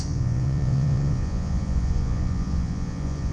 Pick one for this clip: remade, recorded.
remade